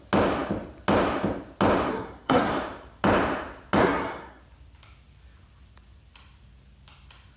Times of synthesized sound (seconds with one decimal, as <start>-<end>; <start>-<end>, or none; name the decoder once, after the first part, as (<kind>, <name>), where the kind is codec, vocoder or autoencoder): 1.9-2.5 (codec, SNAC); 3.8-4.4